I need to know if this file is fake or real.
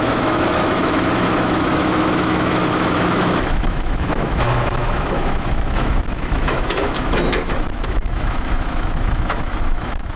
fake